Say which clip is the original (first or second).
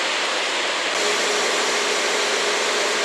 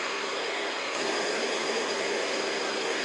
first